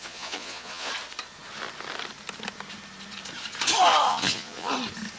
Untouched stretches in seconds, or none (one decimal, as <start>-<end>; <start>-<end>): 0.9-4.1; 4.7-5.2